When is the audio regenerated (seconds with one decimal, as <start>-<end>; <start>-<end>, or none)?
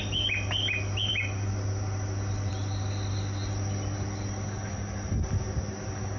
none